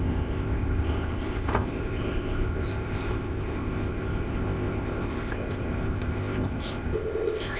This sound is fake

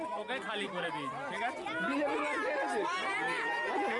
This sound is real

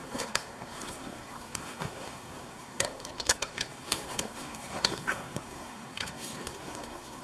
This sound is fake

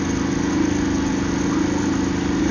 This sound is real